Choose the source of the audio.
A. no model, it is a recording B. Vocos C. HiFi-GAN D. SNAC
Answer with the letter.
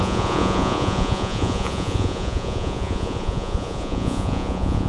B